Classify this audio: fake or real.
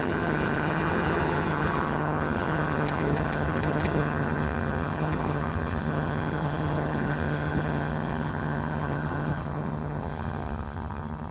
fake